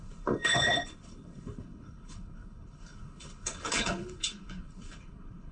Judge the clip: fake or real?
fake